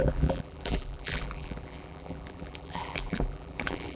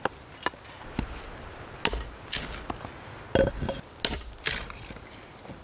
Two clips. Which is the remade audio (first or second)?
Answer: first